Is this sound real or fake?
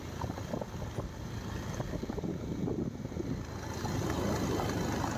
real